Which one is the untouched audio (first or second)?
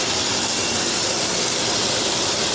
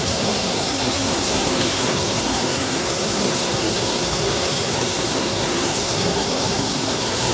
first